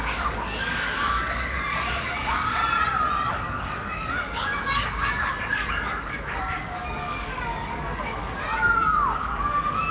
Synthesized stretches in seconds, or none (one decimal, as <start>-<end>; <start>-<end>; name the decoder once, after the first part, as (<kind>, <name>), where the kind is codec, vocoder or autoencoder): 0.0-2.6 (codec, DAC); 3.3-9.9